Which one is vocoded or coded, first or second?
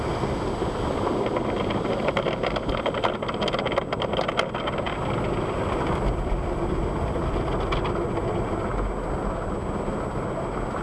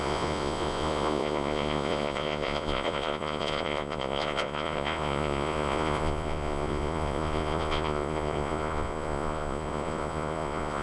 second